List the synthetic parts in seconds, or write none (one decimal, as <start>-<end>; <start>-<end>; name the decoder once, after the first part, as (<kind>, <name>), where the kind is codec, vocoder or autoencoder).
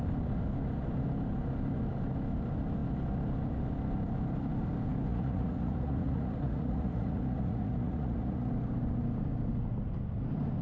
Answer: 5.1-8.5 (vocoder, Vocos)